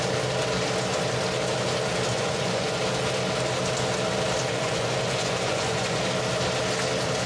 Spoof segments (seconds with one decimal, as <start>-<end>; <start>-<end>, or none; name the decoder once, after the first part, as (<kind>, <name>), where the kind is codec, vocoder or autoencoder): 2.1-2.8 (vocoder, Vocos); 4.5-6.0